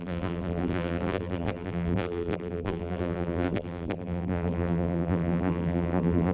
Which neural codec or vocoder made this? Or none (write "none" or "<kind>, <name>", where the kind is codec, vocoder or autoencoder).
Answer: vocoder, BigVGAN v2